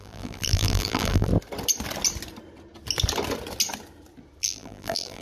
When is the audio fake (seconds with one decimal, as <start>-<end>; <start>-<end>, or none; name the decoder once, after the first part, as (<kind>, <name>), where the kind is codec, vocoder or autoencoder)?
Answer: 0.0-1.3 (vocoder, BigVGAN v2); 4.4-5.2